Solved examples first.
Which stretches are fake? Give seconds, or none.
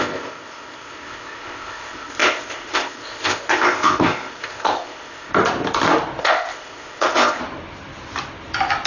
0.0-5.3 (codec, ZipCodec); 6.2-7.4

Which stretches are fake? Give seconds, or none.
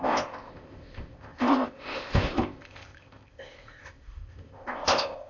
0.0-5.3 (codec, ZipCodec)